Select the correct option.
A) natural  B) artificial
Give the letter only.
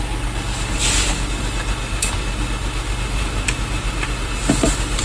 A